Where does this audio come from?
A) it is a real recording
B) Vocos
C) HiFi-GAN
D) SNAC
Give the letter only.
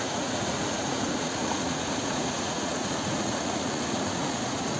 B